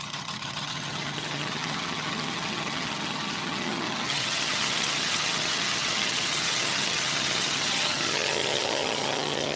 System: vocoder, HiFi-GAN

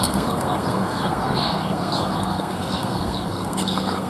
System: codec, SNAC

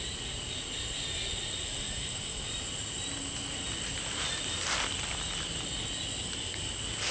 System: none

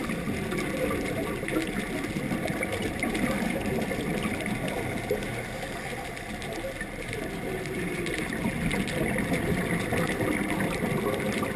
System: none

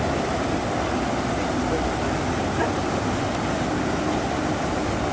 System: none